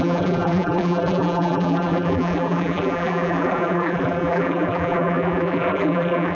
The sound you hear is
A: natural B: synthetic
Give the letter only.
B